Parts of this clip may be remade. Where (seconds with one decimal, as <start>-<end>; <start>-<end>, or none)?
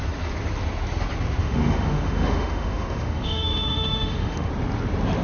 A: 1.4-4.5